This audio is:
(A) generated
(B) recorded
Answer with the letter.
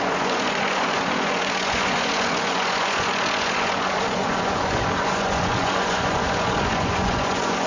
A